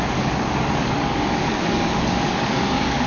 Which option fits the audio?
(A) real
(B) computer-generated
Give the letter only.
B